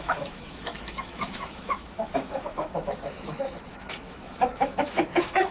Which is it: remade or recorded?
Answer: remade